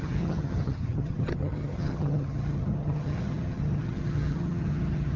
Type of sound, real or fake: fake